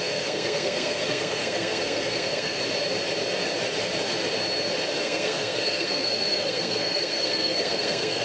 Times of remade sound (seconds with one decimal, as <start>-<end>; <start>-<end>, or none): 0.0-2.6; 5.0-8.2